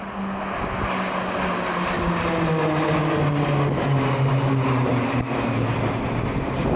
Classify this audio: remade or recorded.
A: recorded